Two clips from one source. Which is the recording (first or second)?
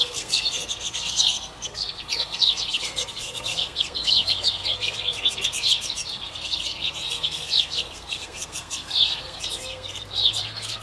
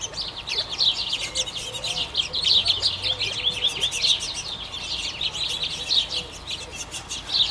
second